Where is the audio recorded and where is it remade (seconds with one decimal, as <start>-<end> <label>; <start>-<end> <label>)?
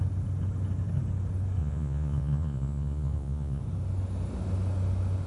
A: 0.0-1.6 recorded; 1.6-3.6 remade; 3.6-5.3 recorded